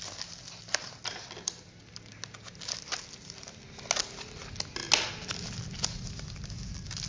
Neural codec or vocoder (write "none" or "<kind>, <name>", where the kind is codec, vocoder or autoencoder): none